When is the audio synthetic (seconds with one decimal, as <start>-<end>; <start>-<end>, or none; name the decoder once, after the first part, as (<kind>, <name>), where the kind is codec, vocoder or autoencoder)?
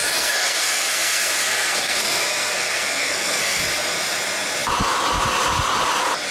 0.0-3.6 (codec, SNAC)